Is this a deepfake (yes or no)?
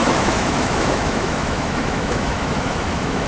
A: yes